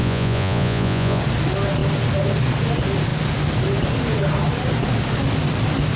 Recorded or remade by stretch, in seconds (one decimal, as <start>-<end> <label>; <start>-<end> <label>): 0.0-1.2 remade; 1.2-6.0 recorded